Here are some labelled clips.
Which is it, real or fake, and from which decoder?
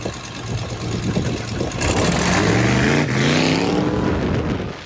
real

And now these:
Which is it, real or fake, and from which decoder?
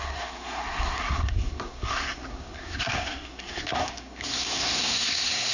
fake, codec, SNAC